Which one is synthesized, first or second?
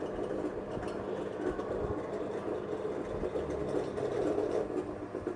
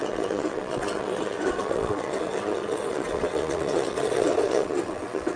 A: second